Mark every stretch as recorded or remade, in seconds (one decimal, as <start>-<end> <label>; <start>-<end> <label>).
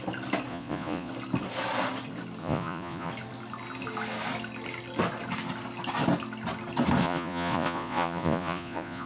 0.0-0.5 recorded; 0.5-1.1 remade; 1.1-2.4 recorded; 2.4-3.1 remade; 3.1-7.0 recorded; 7.0-9.1 remade